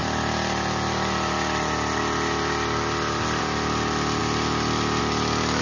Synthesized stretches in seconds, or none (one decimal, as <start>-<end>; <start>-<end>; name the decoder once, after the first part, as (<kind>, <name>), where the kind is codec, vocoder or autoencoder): none